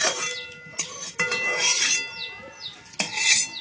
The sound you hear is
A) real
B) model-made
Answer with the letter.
A